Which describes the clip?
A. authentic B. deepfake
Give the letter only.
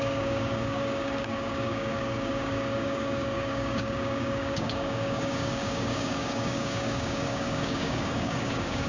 B